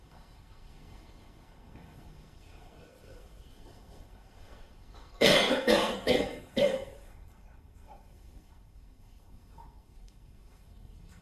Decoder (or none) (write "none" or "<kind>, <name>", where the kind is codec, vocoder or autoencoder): codec, SNAC